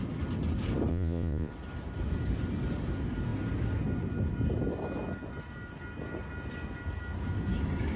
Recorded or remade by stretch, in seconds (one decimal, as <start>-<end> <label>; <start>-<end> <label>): 0.0-0.9 recorded; 0.9-1.5 remade; 1.5-8.0 recorded